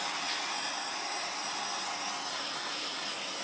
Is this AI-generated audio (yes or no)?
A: no